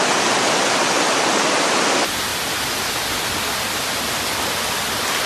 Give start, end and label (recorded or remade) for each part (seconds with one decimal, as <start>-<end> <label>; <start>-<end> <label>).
0.0-5.3 recorded